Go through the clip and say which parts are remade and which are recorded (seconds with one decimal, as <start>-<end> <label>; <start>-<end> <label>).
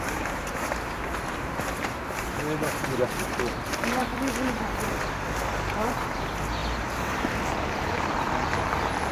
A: 0.0-9.1 recorded